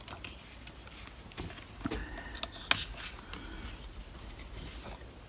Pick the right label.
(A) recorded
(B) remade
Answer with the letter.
A